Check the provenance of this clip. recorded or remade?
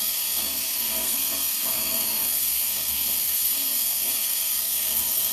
remade